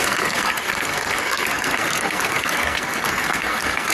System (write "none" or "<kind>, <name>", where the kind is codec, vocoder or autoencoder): codec, SNAC